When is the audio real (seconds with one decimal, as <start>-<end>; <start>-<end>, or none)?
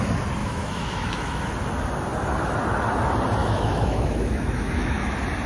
0.0-0.4; 1.5-3.4; 5.1-5.5